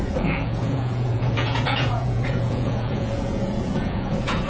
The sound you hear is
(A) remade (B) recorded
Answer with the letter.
A